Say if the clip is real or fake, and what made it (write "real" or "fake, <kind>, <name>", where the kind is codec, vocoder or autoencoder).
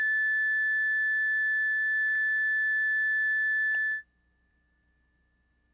real